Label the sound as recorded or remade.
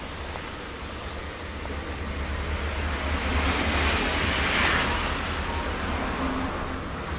recorded